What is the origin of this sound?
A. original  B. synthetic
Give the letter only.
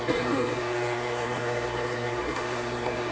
B